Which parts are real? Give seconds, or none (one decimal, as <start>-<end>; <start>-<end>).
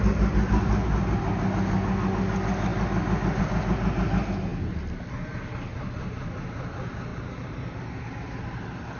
0.0-5.7; 6.4-7.1; 7.6-9.0